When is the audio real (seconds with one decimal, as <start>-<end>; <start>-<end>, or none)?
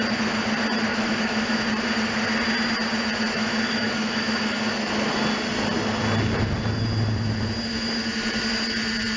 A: 0.0-0.9; 1.6-3.3; 4.9-9.2